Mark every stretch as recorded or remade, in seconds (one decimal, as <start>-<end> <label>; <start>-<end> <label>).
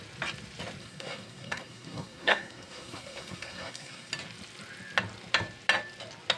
0.0-0.8 recorded; 0.8-4.1 remade; 4.1-6.4 recorded